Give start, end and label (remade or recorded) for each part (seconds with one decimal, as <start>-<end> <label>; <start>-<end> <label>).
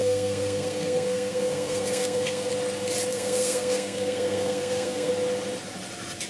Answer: 0.0-2.5 remade; 2.5-3.1 recorded; 3.1-5.1 remade; 5.1-6.3 recorded